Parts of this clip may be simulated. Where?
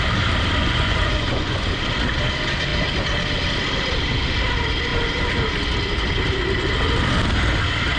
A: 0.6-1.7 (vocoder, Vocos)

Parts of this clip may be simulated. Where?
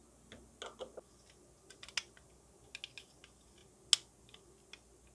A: none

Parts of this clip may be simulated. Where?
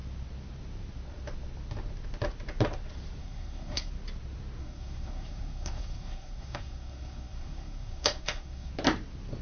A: 3.2-3.9 (codec, SNAC); 4.6-8.7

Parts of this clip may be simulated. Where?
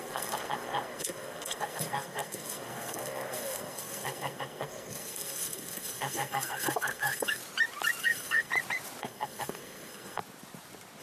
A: 0.0-7.4 (codec, SNAC); 8.0-8.5; 9.0-10.2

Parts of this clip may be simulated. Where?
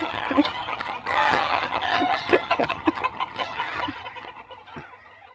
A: 0.0-5.3 (vocoder, HiFi-GAN)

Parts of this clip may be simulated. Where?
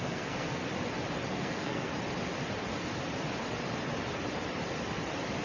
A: 0.0-0.6 (codec, SNAC); 1.3-1.9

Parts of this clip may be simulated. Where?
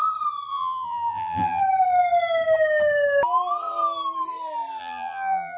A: 0.5-1.6 (vocoder, BigVGAN v2); 4.8-5.6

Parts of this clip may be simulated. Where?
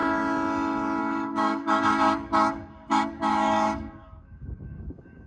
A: 1.0-5.3 (codec, DAC)